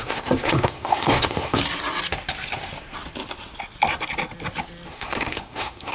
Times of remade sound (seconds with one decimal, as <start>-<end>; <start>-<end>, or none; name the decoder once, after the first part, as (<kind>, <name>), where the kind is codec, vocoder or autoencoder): 0.0-1.6 (codec, SNAC); 4.9-5.9

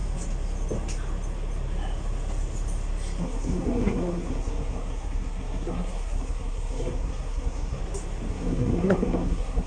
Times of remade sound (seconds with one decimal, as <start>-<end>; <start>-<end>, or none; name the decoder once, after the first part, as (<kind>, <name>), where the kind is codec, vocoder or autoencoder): 3.2-7.8 (codec, SNAC); 8.3-9.7

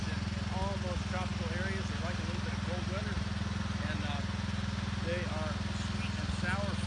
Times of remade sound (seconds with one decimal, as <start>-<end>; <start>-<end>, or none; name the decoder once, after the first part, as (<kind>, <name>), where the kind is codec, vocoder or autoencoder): none